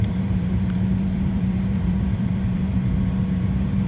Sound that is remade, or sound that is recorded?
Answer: remade